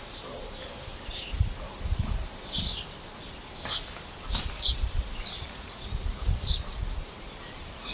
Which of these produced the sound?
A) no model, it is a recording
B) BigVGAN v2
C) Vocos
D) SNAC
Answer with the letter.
B